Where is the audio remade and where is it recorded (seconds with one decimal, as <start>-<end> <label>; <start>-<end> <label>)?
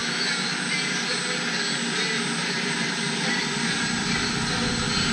0.0-2.4 recorded; 2.4-2.9 remade; 2.9-5.1 recorded